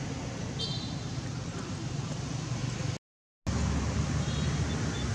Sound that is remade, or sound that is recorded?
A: recorded